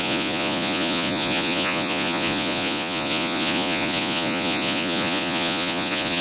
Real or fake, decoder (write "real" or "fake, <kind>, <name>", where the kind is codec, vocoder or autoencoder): fake, vocoder, Vocos